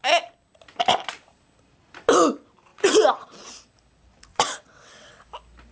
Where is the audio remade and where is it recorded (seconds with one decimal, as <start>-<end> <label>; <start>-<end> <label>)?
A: 0.0-2.7 recorded; 2.7-3.5 remade; 3.5-4.3 recorded; 4.3-5.2 remade; 5.2-5.7 recorded